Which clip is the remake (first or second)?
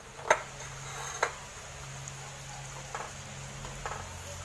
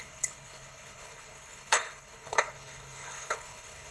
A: second